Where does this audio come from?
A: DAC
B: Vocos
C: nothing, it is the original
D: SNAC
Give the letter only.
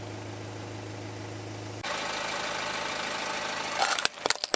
C